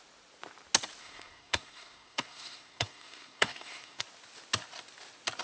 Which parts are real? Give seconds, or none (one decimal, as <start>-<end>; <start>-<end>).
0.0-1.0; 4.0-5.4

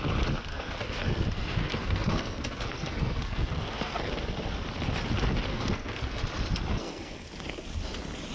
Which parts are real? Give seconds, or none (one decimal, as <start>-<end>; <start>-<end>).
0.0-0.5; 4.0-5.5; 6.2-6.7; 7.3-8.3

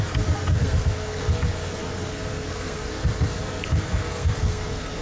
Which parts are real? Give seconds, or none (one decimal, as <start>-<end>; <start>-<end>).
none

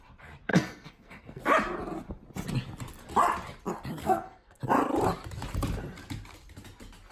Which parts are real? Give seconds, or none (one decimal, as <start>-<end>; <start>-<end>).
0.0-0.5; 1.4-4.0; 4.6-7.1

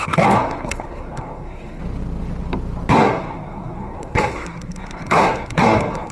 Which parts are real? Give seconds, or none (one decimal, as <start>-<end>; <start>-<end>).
1.8-2.9

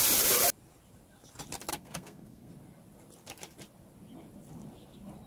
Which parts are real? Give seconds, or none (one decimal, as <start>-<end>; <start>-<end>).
0.0-1.7; 2.5-5.3

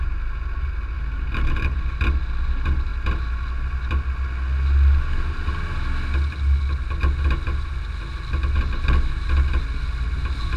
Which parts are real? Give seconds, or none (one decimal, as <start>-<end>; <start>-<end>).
0.0-10.6